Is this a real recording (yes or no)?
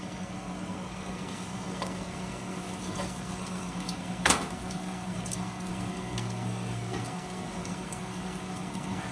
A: no